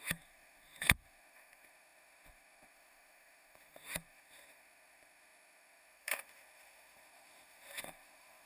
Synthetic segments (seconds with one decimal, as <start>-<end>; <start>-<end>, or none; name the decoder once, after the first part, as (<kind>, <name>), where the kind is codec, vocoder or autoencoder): 0.0-8.5 (autoencoder, DAC-VAE)